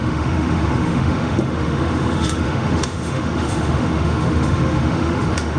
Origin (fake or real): fake